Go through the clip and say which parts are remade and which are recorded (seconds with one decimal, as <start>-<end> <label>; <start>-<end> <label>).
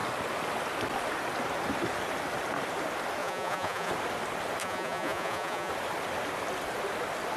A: 0.0-3.2 recorded; 3.2-3.9 remade; 3.9-4.6 recorded; 4.6-5.7 remade; 5.7-7.4 recorded